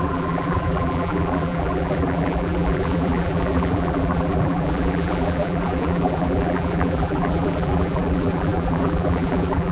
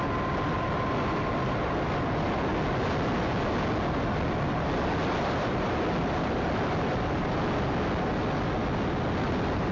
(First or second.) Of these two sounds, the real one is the second